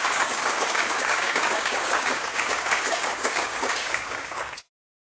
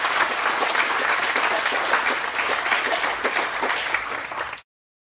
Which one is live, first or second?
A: second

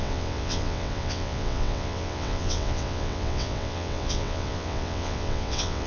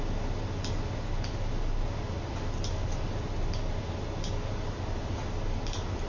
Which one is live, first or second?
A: second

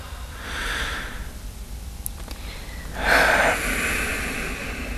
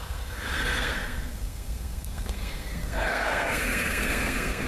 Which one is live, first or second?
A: first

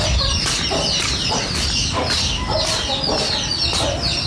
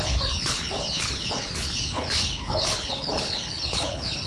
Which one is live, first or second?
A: first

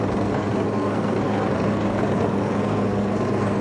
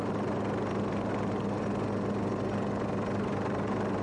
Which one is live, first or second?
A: second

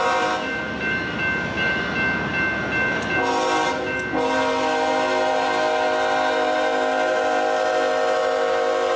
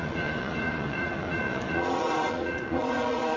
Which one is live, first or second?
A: first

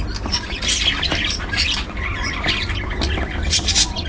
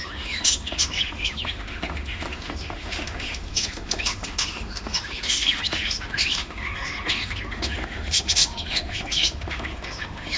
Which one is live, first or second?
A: first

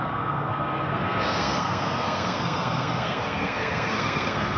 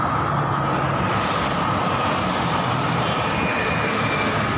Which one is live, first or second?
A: second